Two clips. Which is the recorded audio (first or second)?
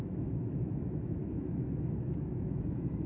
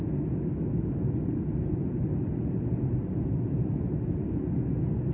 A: second